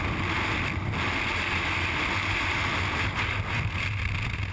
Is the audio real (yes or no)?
yes